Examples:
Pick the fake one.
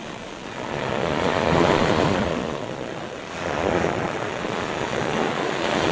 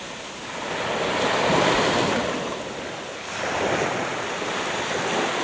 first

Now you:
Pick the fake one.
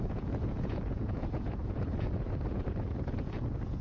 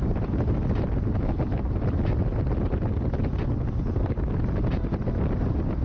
first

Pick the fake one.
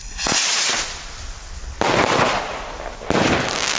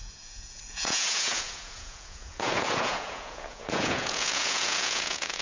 second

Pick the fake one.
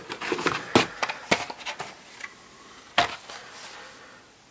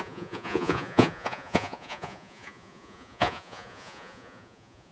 second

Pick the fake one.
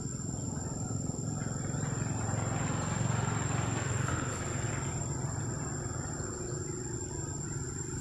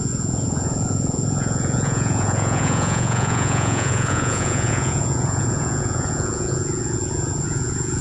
second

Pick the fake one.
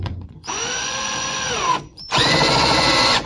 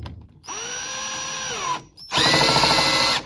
first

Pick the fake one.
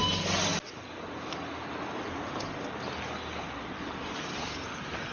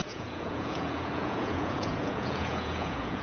second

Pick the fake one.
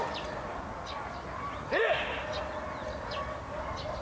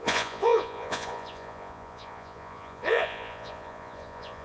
second